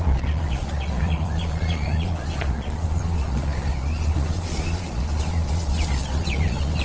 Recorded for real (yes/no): no